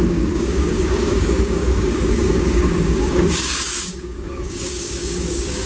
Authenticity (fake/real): fake